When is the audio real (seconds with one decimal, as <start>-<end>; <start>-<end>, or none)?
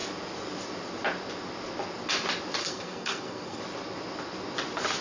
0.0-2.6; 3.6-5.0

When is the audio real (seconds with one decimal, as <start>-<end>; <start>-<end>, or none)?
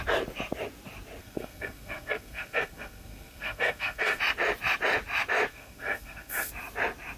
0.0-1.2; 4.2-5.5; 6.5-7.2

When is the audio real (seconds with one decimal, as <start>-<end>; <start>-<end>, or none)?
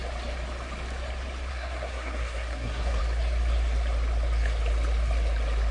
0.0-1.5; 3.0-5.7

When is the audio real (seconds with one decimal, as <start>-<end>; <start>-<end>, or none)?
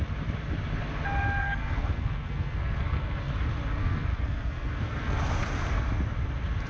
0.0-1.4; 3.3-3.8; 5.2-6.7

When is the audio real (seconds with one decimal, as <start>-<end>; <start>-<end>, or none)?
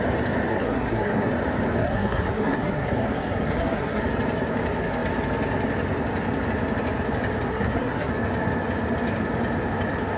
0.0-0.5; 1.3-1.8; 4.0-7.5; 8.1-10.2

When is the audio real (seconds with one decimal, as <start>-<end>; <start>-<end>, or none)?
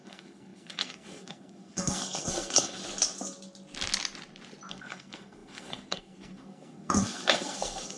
2.8-4.7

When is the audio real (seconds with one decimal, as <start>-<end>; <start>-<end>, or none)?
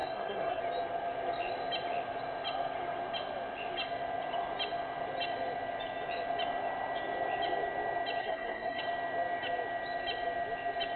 0.6-8.2; 8.8-11.0